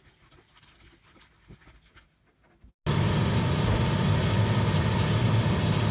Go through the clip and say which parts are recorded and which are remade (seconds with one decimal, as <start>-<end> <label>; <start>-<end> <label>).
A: 0.0-5.9 recorded